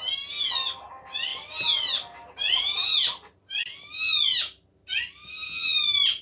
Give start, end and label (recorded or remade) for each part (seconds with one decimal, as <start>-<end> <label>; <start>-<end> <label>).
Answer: 0.0-6.2 recorded